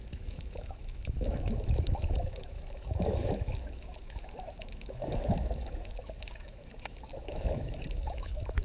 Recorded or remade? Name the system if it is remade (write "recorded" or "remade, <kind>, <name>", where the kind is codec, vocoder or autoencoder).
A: remade, autoencoder, DAC-VAE